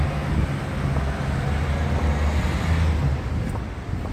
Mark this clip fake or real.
real